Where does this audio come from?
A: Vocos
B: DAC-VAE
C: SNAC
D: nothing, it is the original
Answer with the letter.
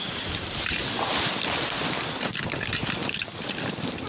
D